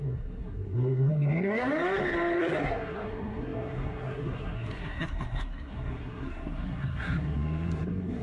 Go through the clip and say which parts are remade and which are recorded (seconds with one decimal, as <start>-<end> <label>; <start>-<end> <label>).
0.0-1.7 remade; 1.7-2.4 recorded; 2.4-8.2 remade